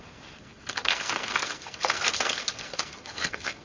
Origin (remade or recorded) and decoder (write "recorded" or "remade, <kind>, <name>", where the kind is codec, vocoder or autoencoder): remade, codec, SNAC